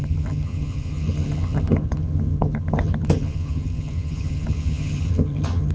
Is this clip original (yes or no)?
no